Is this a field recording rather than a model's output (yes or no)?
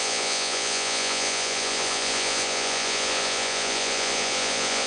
no